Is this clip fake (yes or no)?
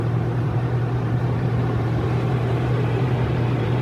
yes